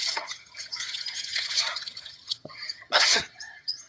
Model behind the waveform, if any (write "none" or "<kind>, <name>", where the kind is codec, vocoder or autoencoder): vocoder, HiFi-GAN